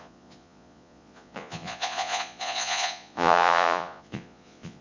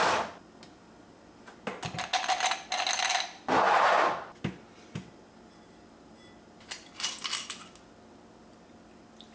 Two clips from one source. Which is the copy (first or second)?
first